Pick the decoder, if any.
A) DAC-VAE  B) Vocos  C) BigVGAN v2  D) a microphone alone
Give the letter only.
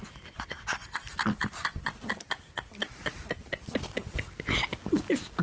D